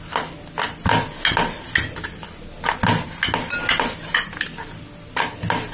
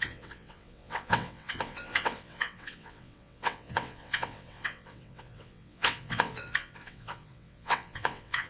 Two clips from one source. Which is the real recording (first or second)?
first